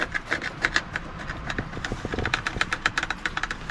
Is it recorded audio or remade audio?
remade